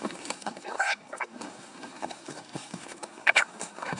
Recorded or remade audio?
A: remade